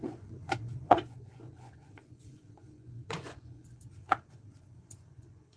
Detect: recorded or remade remade